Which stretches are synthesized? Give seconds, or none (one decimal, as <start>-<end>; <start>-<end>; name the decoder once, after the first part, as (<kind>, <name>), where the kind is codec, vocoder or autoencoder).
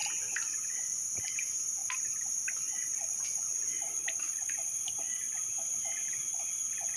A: none